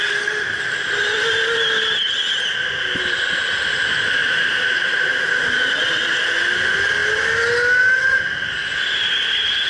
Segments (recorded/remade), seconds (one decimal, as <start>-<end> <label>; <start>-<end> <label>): 0.0-4.2 recorded; 4.2-5.0 remade; 5.0-9.7 recorded

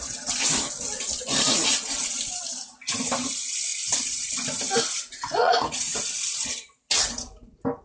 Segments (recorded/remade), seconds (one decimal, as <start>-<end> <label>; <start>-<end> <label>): 0.0-5.3 recorded; 5.3-6.0 remade; 6.0-7.8 recorded

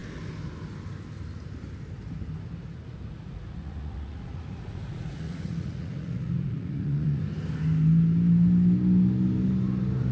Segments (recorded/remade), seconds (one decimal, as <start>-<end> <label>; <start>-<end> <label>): 0.0-2.9 recorded; 2.9-7.2 remade; 7.2-10.1 recorded

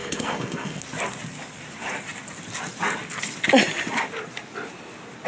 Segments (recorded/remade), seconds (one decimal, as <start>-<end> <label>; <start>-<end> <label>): 0.0-0.8 remade; 0.8-5.3 recorded

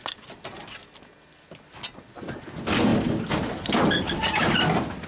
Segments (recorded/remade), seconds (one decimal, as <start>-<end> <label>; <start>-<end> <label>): 0.0-5.1 recorded

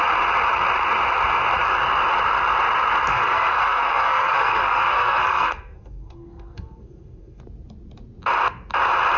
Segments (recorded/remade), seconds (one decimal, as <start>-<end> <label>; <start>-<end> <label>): 0.0-3.1 recorded; 3.1-7.4 remade; 7.4-9.2 recorded

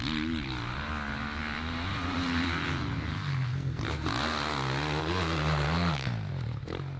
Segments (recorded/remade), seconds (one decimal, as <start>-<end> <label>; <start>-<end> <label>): 0.0-3.1 recorded; 3.1-3.9 remade; 3.9-5.0 recorded; 5.0-6.3 remade; 6.3-7.0 recorded

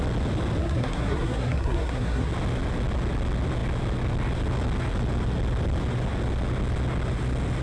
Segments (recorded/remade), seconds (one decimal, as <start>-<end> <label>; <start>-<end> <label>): 0.0-0.6 recorded; 0.6-2.3 remade; 2.3-7.6 recorded